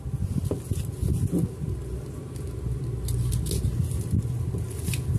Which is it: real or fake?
real